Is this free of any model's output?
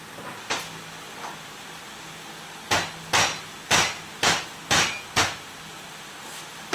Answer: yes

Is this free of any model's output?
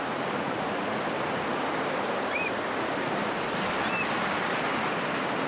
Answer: yes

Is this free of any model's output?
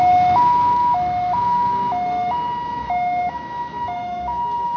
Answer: no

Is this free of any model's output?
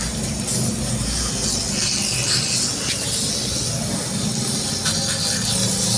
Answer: yes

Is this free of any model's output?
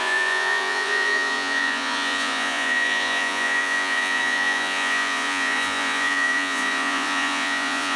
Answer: no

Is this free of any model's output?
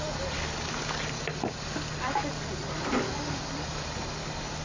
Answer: yes